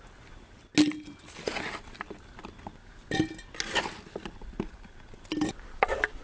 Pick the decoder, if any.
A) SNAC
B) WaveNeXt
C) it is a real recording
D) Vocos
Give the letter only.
C